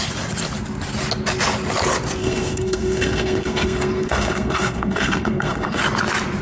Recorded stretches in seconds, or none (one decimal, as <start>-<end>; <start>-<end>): 0.0-2.2; 5.8-6.4